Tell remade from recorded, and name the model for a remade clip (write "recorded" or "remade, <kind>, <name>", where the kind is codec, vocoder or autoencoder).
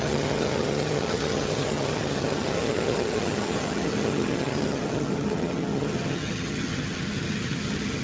remade, vocoder, HiFi-GAN